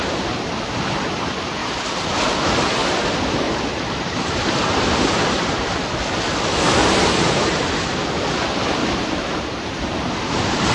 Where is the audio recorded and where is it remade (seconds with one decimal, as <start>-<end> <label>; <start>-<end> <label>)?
0.0-1.6 recorded; 1.6-2.2 remade; 2.2-2.8 recorded; 2.8-5.6 remade; 5.6-6.8 recorded; 6.8-7.7 remade; 7.7-8.8 recorded; 8.8-10.7 remade